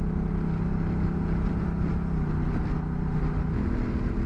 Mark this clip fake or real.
real